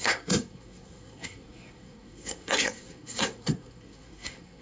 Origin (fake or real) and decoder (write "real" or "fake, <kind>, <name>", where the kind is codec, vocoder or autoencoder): fake, codec, SNAC